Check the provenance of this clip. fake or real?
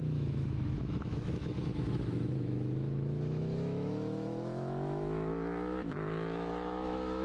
fake